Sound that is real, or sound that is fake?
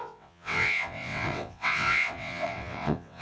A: fake